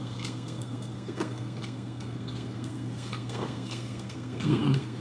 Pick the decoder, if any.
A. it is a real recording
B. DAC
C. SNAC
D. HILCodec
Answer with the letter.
C